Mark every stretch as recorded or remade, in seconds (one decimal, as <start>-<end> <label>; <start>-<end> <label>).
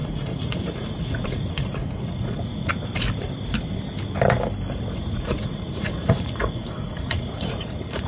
0.0-2.7 remade; 2.7-4.9 recorded; 4.9-8.1 remade